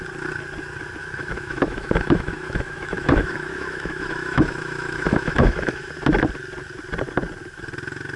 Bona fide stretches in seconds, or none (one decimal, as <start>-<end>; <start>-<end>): 0.0-1.0; 5.9-8.2

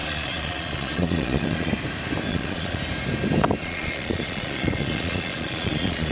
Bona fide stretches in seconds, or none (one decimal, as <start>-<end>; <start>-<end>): 1.7-2.3; 2.8-3.6

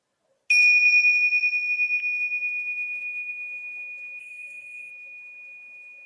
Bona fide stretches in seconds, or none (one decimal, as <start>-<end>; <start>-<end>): 0.0-4.2; 4.9-6.1

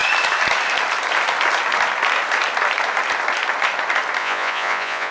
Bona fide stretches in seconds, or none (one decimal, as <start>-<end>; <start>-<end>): 0.0-4.2

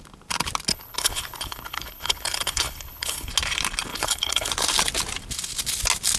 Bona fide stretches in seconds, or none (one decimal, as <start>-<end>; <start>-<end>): 0.0-0.7; 3.3-3.9; 4.5-6.2

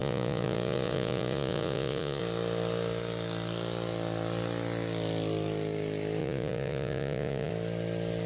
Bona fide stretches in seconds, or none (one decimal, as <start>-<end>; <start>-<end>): 2.2-6.2; 7.5-8.3

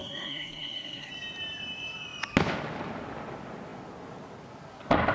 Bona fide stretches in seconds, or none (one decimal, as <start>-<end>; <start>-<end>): 1.1-5.1

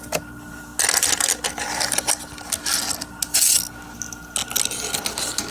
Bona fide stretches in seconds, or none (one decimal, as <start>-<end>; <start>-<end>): 0.0-5.5